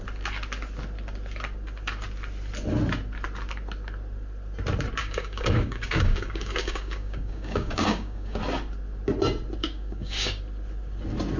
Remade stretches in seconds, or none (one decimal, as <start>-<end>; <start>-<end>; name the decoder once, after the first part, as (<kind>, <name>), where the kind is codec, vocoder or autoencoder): 5.0-8.4 (codec, DAC); 9.6-10.4